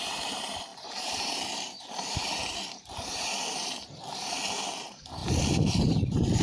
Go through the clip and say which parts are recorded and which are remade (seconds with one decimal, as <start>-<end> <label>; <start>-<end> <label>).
0.0-5.2 remade; 5.2-5.8 recorded; 5.8-6.4 remade